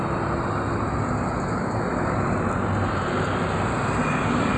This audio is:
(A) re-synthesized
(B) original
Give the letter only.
B